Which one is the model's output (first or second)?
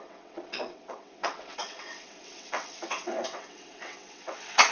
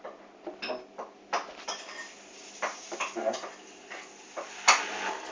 first